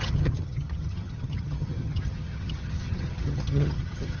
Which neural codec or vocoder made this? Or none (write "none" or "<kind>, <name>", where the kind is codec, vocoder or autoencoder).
vocoder, HiFi-GAN